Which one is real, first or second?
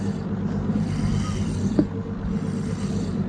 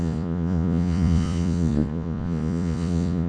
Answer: first